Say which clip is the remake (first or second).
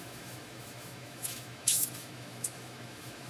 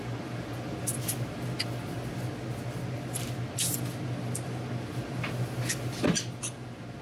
first